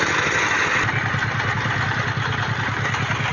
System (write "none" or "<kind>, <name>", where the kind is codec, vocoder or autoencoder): none